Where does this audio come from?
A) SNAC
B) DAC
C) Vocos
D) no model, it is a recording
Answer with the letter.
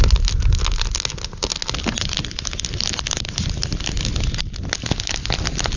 D